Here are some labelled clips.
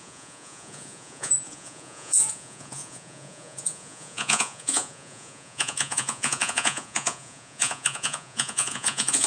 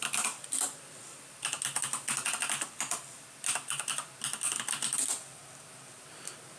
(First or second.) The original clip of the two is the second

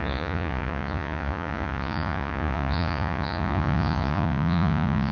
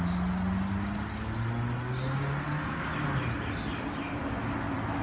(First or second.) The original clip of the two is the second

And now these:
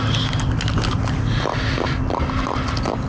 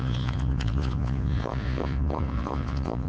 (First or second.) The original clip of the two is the first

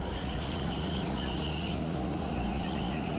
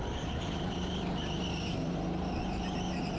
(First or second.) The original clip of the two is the second